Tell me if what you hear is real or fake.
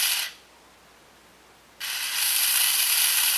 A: real